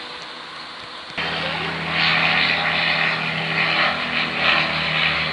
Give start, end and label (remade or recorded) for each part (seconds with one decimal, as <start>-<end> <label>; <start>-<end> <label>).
0.0-5.3 recorded